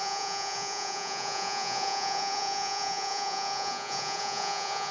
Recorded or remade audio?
remade